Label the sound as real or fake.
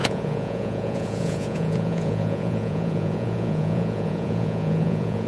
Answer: fake